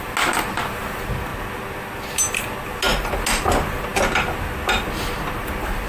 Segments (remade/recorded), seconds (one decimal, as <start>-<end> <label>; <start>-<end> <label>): 0.0-5.9 recorded